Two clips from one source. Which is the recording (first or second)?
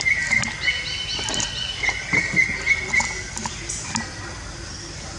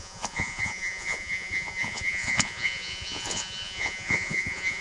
first